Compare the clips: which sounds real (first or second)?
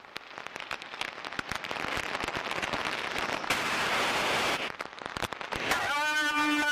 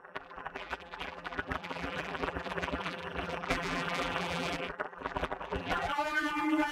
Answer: first